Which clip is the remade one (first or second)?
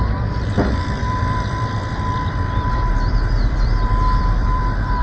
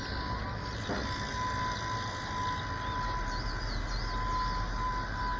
first